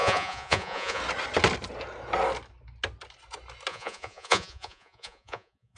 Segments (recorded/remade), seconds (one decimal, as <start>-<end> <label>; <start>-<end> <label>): 0.0-1.0 remade; 1.0-3.7 recorded; 3.7-5.8 remade